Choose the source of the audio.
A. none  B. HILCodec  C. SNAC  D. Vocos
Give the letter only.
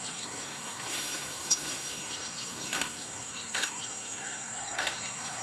C